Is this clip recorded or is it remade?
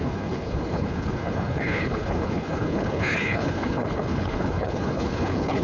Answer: remade